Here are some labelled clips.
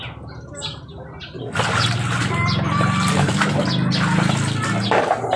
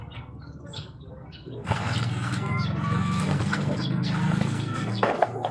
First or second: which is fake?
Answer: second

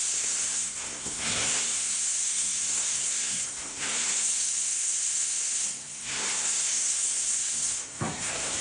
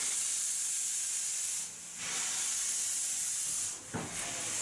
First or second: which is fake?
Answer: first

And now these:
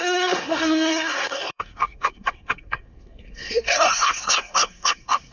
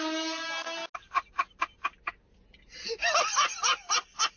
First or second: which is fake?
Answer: first